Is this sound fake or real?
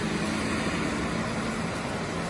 real